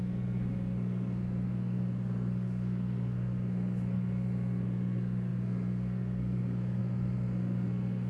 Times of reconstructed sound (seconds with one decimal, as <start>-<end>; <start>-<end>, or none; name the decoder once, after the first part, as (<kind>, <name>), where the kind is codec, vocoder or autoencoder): 0.0-8.1 (codec, SNAC)